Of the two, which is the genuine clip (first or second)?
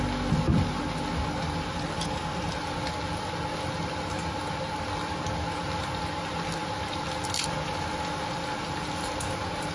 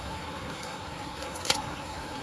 first